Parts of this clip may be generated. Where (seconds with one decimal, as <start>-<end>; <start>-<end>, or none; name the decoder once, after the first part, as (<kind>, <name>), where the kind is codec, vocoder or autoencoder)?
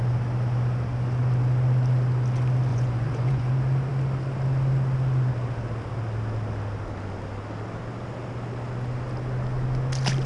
2.7-3.5 (vocoder, Vocos)